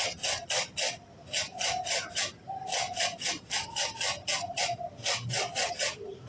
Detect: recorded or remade recorded